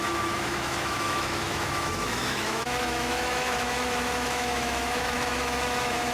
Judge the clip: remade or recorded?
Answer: remade